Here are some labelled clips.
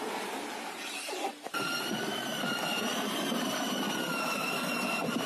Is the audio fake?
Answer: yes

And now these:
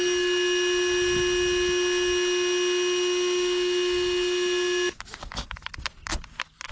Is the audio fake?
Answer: no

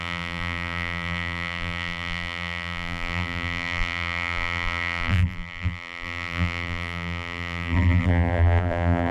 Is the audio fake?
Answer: yes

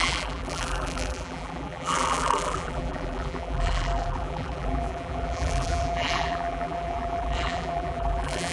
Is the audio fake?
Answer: yes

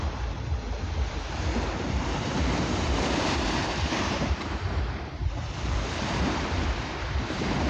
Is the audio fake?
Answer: yes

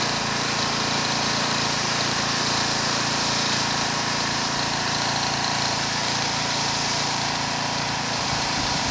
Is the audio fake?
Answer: yes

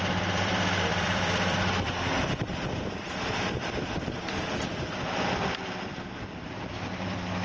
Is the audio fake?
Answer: yes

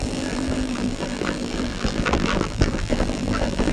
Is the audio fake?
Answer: yes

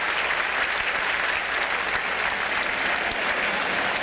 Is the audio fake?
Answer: no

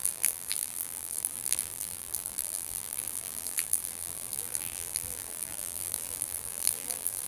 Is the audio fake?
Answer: yes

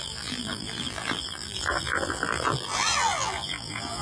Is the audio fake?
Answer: yes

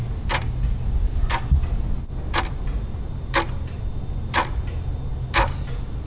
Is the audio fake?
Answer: no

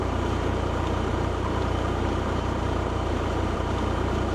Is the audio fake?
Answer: yes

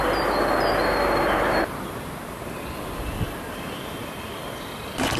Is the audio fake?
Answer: no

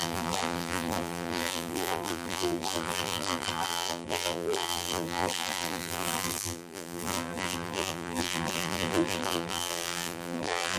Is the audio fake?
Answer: yes